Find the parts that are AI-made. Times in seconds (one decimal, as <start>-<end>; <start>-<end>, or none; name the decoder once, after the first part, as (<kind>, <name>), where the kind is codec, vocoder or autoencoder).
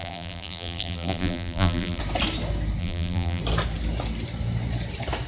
0.0-2.0 (vocoder, BigVGAN v2); 2.8-3.4